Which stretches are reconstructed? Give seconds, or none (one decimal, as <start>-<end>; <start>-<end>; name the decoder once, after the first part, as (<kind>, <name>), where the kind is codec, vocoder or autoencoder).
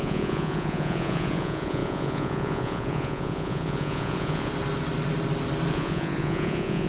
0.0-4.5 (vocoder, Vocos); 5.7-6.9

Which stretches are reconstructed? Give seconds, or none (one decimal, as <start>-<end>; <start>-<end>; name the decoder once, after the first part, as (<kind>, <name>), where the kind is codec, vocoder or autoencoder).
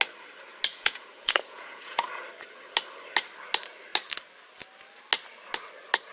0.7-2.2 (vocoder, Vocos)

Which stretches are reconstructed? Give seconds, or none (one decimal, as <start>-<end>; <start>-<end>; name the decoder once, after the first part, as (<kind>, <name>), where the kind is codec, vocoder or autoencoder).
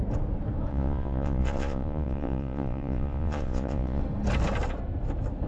0.7-4.0 (vocoder, Vocos)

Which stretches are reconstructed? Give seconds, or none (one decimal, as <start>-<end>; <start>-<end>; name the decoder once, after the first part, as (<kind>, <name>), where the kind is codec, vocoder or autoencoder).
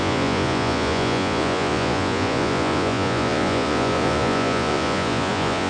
0.0-5.7 (vocoder, Vocos)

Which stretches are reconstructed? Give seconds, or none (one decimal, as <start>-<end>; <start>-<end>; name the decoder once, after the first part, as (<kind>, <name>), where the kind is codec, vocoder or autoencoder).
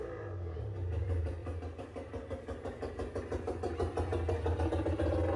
none